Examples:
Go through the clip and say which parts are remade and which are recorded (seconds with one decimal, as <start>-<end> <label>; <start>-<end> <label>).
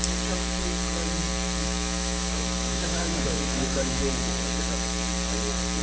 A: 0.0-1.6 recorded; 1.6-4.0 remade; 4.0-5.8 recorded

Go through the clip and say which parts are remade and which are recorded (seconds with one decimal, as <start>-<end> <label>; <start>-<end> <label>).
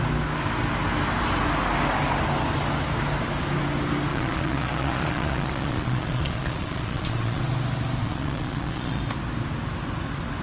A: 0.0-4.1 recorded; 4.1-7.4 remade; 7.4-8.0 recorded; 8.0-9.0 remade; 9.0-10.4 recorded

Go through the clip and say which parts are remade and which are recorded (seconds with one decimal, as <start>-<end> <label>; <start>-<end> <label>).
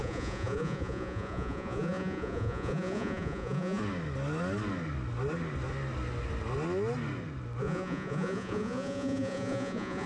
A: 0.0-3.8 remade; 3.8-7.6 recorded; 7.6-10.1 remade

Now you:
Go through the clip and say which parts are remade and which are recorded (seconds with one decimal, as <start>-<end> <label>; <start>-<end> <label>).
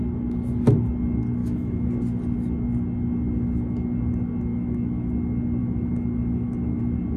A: 0.0-1.4 recorded; 1.4-1.9 remade; 1.9-4.5 recorded; 4.5-5.1 remade; 5.1-5.6 recorded; 5.6-6.8 remade; 6.8-7.2 recorded